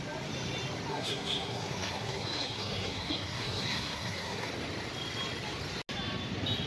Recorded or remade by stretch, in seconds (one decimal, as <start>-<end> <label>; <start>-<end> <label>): 0.0-0.9 recorded; 0.9-4.5 remade; 4.5-6.7 recorded